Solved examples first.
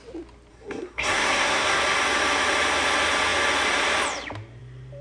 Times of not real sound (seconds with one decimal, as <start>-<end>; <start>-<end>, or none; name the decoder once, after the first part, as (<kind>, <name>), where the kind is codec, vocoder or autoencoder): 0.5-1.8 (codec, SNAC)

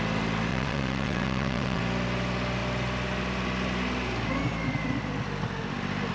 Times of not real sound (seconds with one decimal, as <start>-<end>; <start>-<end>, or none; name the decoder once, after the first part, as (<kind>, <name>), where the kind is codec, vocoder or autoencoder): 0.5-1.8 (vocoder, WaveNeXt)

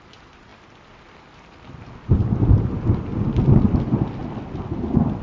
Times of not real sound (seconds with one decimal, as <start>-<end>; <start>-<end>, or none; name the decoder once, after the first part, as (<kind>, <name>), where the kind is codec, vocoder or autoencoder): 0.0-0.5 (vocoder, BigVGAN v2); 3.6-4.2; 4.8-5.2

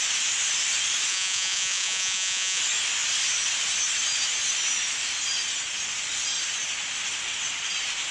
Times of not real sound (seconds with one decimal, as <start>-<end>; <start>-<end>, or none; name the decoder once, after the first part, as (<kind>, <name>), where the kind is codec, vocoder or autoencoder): 1.1-2.6 (vocoder, Vocos)

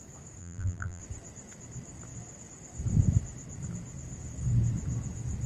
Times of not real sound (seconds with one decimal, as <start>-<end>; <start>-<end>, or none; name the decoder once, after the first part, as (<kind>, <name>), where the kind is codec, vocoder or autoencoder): 0.4-1.0 (vocoder, BigVGAN v2)